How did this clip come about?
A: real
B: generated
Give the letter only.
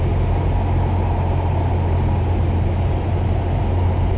A